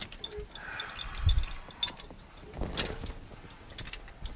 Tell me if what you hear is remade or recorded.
recorded